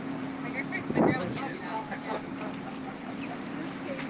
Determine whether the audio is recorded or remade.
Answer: recorded